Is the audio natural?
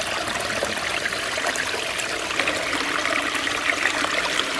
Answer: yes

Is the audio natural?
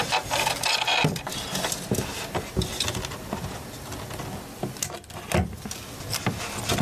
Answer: yes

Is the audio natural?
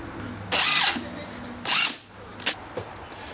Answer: yes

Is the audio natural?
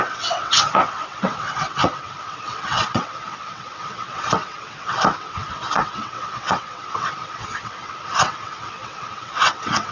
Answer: no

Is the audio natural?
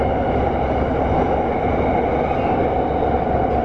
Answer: yes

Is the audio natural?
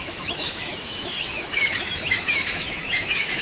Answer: no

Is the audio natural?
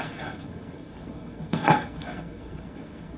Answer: no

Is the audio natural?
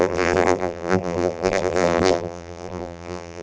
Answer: no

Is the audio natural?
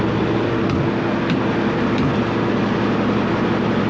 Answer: yes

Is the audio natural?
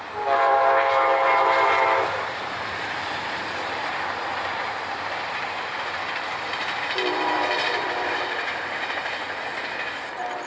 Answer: no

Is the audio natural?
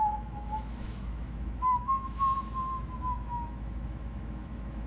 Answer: no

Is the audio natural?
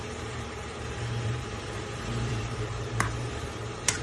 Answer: no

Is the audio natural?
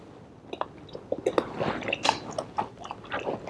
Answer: yes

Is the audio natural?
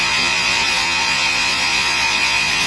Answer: no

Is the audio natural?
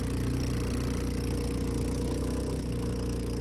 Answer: yes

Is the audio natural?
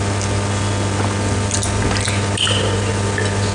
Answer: yes